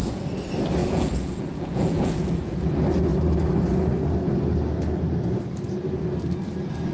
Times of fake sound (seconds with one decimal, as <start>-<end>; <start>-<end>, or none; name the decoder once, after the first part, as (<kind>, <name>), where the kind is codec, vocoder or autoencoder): 0.8-2.7 (vocoder, Vocos)